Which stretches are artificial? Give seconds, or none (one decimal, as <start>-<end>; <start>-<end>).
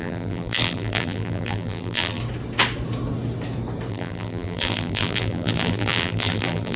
0.0-2.2; 3.9-6.8